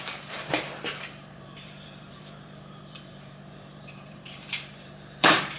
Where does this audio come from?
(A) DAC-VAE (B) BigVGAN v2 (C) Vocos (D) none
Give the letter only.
B